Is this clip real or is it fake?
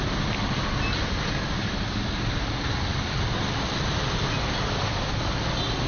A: real